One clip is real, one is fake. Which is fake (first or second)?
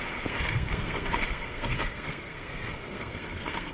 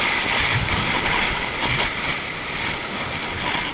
first